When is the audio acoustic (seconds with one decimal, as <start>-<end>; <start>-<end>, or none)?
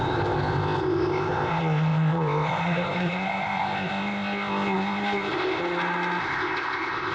5.6-6.2